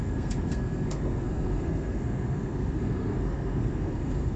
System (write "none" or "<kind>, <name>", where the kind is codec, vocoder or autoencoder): codec, SNAC